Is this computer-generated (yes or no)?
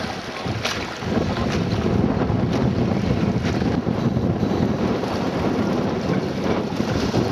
no